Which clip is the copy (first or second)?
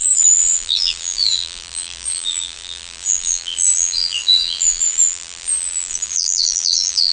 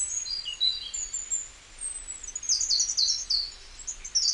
first